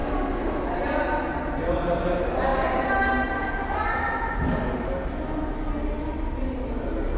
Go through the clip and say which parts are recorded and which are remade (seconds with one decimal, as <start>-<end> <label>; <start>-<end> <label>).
0.0-0.7 remade; 0.7-7.2 recorded